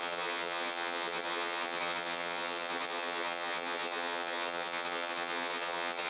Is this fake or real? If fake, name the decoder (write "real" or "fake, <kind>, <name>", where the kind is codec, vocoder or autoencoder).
fake, vocoder, HiFi-GAN